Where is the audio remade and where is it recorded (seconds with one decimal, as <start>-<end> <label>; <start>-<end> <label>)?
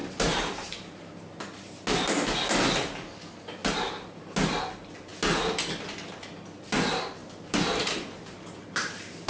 0.0-1.4 remade; 1.4-3.6 recorded; 3.6-4.2 remade; 4.2-7.2 recorded; 7.2-9.3 remade